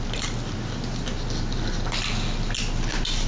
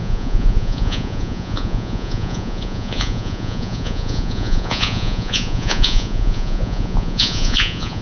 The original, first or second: first